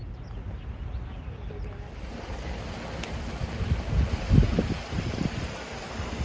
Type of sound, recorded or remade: recorded